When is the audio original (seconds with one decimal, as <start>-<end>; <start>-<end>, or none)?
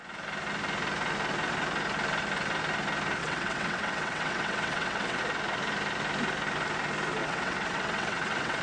0.0-3.2; 5.2-7.2